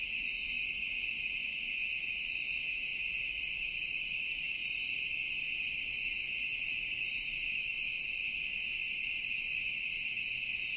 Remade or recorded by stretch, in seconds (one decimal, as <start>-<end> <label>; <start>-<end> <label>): 0.0-4.6 remade; 4.6-6.0 recorded; 6.0-7.6 remade; 7.6-9.6 recorded; 9.6-10.8 remade